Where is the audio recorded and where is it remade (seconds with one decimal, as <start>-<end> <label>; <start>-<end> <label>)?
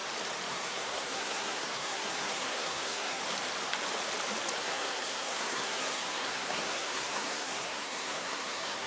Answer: 0.0-0.5 recorded; 0.5-3.2 remade; 3.2-4.6 recorded; 4.6-8.9 remade